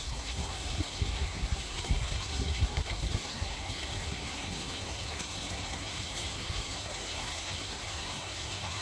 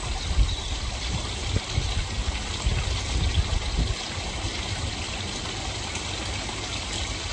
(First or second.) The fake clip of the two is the first